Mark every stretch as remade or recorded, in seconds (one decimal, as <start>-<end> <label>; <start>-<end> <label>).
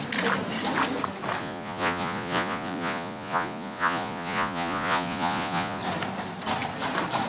0.0-1.4 recorded; 1.4-5.8 remade; 5.8-7.3 recorded